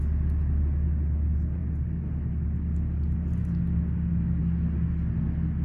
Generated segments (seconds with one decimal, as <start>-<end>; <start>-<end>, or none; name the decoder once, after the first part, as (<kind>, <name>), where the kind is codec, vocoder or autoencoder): none